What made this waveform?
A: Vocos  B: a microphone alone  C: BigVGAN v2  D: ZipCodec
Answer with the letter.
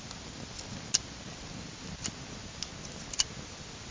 B